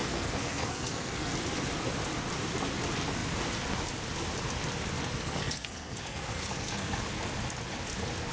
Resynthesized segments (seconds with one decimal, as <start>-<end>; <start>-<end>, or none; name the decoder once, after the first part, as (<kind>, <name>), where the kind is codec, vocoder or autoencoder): 0.0-1.3 (codec, SNAC); 5.0-7.0